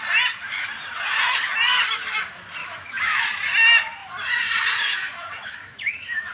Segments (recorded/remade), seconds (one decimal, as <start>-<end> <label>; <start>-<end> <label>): 0.0-2.6 recorded; 2.6-3.2 remade; 3.2-4.9 recorded; 4.9-6.3 remade